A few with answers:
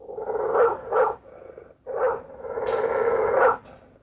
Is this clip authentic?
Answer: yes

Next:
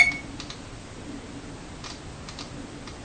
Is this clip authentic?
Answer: yes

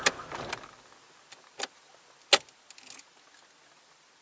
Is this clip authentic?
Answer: yes